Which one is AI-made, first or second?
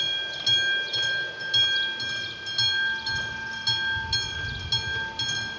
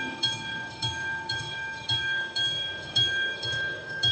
second